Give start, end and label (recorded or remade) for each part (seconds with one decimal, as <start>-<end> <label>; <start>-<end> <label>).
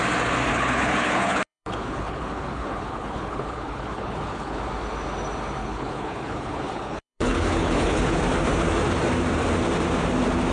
0.0-0.5 recorded; 0.5-4.6 remade; 4.6-5.6 recorded; 5.6-8.2 remade; 8.2-10.5 recorded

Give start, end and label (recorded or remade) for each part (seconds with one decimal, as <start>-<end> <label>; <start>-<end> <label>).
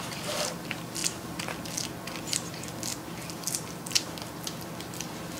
0.0-5.4 recorded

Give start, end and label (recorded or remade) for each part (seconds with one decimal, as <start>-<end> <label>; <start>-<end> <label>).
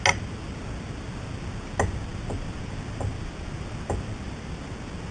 0.0-5.1 recorded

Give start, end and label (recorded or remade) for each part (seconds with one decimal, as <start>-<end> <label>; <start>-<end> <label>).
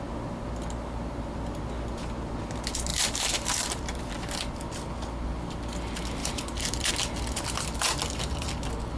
0.0-2.9 recorded; 2.9-4.1 remade; 4.1-6.2 recorded; 6.2-6.9 remade; 6.9-9.0 recorded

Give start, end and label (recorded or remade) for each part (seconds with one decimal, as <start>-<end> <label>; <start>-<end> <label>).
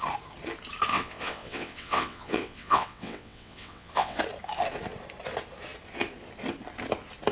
0.0-0.9 recorded; 0.9-4.2 remade; 4.2-7.3 recorded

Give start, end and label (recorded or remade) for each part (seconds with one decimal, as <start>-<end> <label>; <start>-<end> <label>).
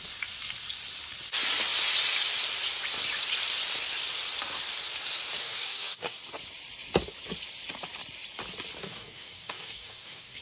0.0-5.4 recorded; 5.4-6.2 remade; 6.2-8.8 recorded; 8.8-10.4 remade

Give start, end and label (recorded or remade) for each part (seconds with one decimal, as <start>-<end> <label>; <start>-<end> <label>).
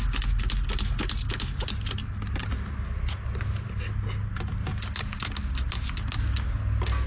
0.0-7.1 recorded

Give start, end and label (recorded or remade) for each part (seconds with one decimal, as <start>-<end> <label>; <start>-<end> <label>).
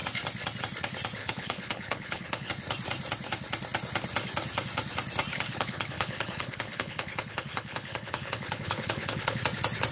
0.0-1.2 recorded; 1.2-2.5 remade; 2.5-5.3 recorded; 5.3-9.4 remade; 9.4-9.9 recorded